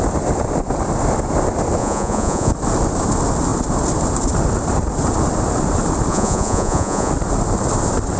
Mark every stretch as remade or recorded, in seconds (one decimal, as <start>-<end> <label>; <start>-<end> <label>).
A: 0.0-1.8 recorded; 1.8-2.5 remade; 2.5-6.1 recorded; 6.1-7.1 remade; 7.1-8.2 recorded